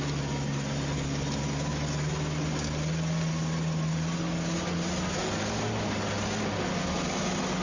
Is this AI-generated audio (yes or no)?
no